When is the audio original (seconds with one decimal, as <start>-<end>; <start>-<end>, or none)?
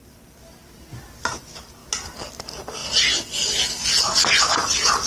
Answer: 0.0-5.1